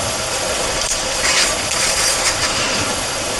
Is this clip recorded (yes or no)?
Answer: no